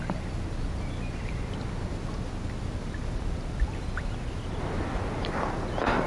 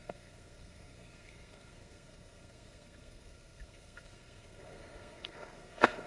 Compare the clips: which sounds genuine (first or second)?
first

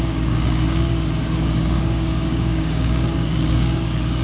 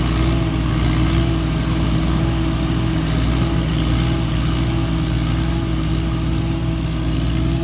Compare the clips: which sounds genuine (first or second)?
second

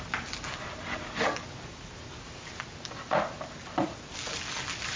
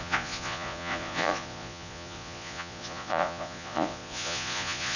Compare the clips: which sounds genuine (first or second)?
first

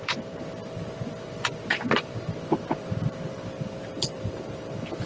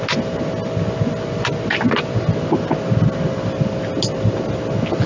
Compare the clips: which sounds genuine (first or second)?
second